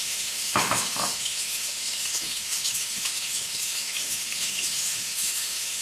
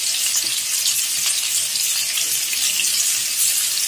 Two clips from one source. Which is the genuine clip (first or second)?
second